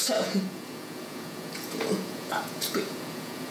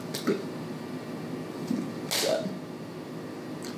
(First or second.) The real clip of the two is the second